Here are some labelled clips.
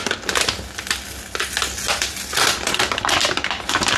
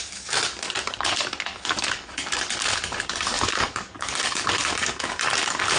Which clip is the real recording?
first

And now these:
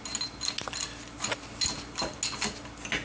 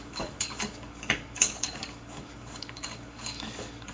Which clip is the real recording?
first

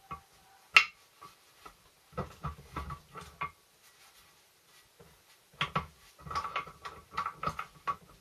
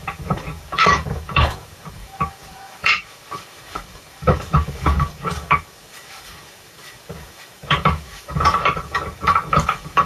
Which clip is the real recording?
first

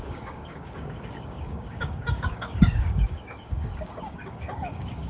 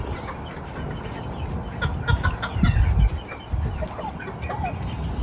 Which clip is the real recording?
second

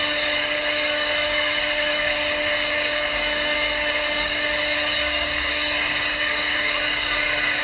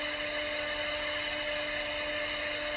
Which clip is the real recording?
second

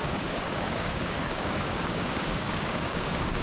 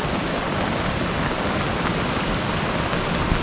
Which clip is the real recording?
second